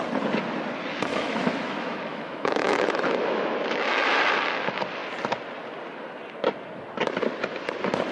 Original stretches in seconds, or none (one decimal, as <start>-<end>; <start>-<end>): 0.0-1.1; 4.2-8.1